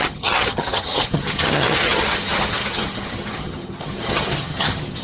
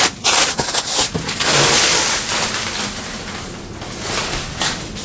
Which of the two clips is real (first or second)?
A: second